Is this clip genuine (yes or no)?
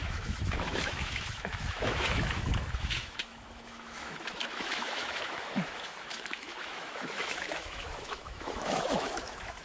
no